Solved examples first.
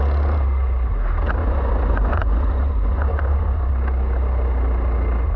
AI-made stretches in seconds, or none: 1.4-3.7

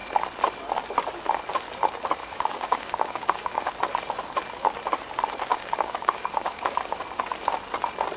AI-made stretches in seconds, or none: 2.2-3.7; 5.5-7.0

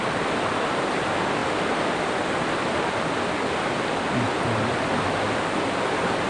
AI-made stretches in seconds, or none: none

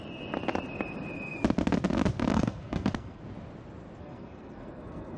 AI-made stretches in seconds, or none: 2.3-3.2; 4.0-5.2